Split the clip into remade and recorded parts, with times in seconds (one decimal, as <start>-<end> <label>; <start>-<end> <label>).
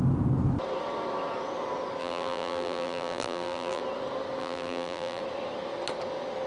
0.0-2.0 recorded; 2.0-3.8 remade; 3.8-4.4 recorded; 4.4-5.2 remade; 5.2-6.5 recorded